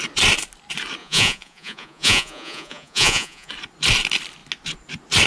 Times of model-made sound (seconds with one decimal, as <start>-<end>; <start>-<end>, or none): 1.0-3.5